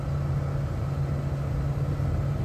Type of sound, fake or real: real